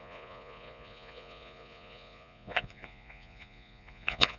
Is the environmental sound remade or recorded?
remade